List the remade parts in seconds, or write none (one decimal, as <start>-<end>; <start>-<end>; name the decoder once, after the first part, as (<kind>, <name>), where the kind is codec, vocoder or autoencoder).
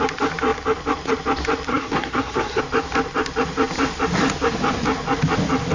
1.7-2.6 (codec, SNAC)